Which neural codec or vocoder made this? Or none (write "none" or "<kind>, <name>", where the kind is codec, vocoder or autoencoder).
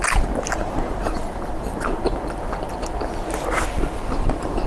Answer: none